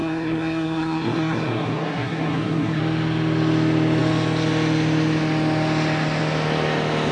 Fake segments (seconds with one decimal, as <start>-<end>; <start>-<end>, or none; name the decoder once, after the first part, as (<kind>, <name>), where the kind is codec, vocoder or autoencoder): 0.0-2.8 (codec, SNAC)